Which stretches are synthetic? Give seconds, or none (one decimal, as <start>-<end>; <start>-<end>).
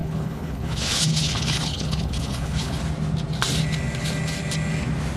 0.0-2.8